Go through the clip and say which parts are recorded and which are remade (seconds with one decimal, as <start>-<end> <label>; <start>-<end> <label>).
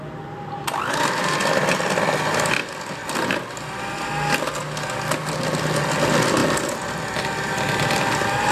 0.0-8.5 recorded